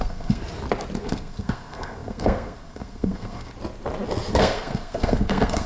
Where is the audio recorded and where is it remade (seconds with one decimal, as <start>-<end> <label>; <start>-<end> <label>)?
0.0-0.4 remade; 0.4-1.0 recorded; 1.0-3.5 remade; 3.5-4.3 recorded; 4.3-5.7 remade